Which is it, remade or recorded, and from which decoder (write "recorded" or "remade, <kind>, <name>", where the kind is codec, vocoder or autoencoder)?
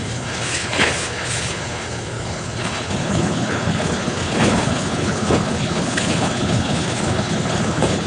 remade, codec, HILCodec